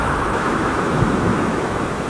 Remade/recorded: remade